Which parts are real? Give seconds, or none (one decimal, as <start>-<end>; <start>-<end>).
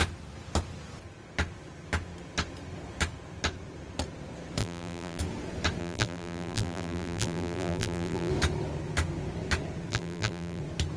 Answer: 0.0-4.6; 5.2-5.8; 8.3-9.9; 10.6-11.0